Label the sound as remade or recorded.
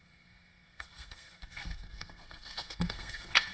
remade